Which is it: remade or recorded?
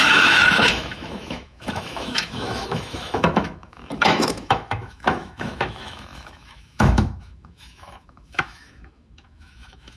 remade